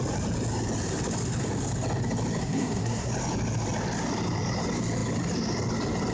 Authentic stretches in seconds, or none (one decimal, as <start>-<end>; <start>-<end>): 0.0-2.4; 3.1-6.1